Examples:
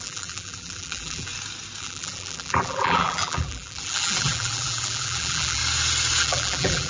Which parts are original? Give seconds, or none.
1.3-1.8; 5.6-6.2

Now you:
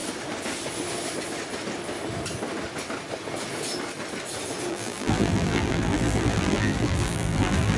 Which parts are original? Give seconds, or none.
0.0-4.7

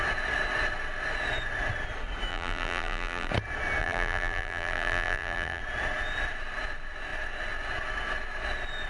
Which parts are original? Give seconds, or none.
0.0-2.3; 3.3-3.8; 5.6-8.9

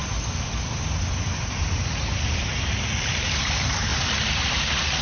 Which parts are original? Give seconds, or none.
0.0-1.2; 3.9-4.5

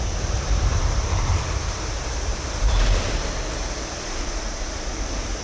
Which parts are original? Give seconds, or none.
none

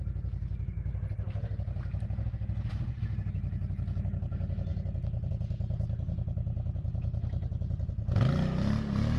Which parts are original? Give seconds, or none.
0.0-9.2

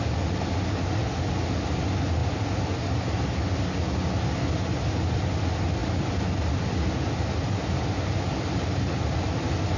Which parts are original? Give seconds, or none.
0.0-5.8; 6.4-9.8